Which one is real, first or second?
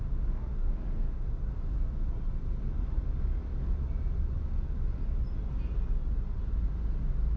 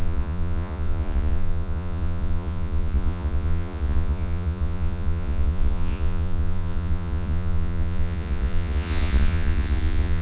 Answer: first